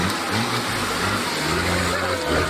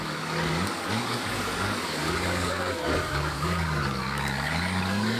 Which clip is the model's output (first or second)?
second